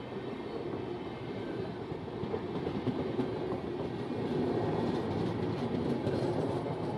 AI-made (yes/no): no